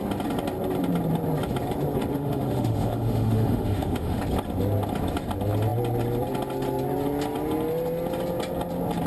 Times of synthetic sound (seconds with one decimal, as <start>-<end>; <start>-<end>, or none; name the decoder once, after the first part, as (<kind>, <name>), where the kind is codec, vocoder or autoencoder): 2.1-4.2 (autoencoder, DAC-VAE)